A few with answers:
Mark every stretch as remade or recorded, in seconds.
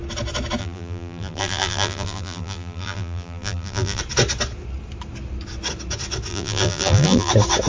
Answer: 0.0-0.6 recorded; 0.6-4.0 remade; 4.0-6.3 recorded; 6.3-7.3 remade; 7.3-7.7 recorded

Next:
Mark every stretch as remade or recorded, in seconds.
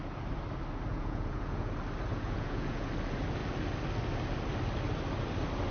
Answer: 0.0-0.9 recorded; 0.9-1.7 remade; 1.7-2.1 recorded; 2.1-2.9 remade; 2.9-5.7 recorded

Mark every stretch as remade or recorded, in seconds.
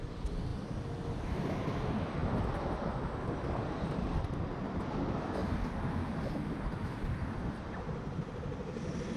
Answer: 0.0-9.2 recorded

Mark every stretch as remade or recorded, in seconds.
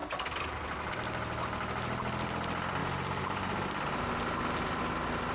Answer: 0.0-2.8 recorded; 2.8-4.8 remade; 4.8-5.3 recorded